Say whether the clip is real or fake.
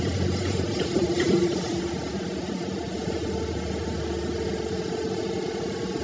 real